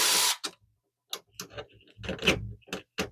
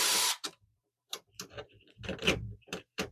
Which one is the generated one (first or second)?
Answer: second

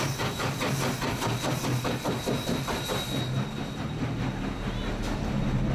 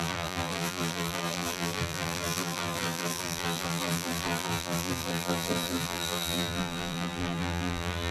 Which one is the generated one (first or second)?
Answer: second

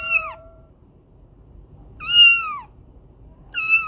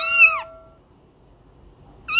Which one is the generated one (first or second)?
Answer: first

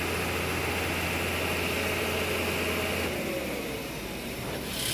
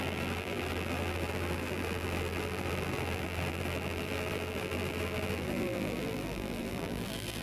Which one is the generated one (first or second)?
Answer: second